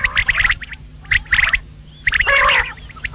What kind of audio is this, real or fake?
real